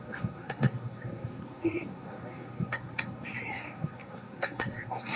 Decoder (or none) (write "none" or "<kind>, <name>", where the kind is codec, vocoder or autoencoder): codec, SNAC